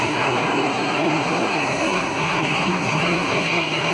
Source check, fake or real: fake